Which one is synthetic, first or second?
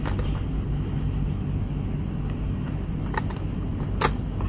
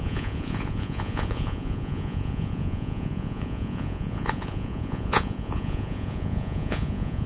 second